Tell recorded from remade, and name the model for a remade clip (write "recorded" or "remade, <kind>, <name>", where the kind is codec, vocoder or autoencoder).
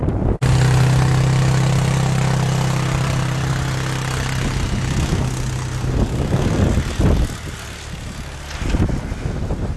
recorded